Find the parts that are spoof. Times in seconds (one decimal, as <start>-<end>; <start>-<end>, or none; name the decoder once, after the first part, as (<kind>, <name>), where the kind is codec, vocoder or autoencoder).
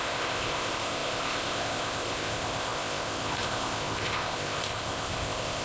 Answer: 0.0-5.6 (codec, ZipCodec)